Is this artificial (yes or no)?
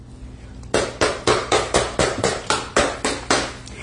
no